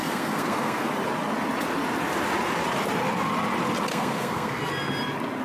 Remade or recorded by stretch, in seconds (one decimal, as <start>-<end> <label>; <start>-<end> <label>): 0.0-0.9 remade; 0.9-3.9 recorded; 3.9-4.6 remade; 4.6-5.4 recorded